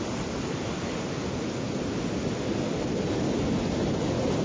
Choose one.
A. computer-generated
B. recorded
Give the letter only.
B